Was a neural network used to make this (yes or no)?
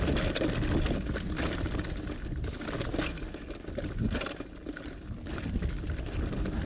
no